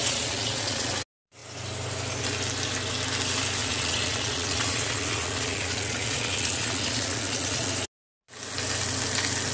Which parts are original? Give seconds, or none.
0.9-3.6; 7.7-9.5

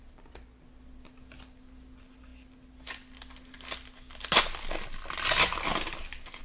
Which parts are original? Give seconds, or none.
0.0-6.4

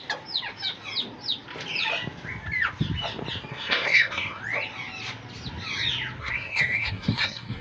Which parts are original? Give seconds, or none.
0.0-3.5; 4.4-6.2

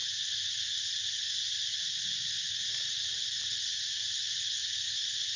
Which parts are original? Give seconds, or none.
0.0-4.6